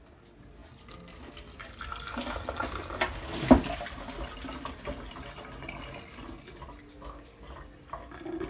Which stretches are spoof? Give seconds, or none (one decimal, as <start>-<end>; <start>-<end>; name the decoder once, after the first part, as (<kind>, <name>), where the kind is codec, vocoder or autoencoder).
none